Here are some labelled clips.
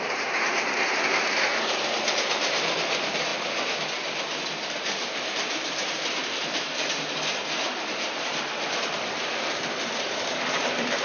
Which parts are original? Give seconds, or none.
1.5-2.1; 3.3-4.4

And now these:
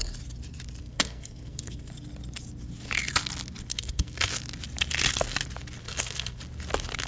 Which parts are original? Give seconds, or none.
0.0-0.8; 1.9-3.7; 4.3-5.8; 6.4-7.1

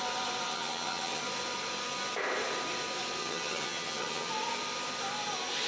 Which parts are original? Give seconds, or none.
0.0-0.5; 1.2-3.2; 4.3-5.7